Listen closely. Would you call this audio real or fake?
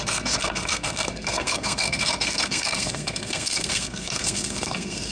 fake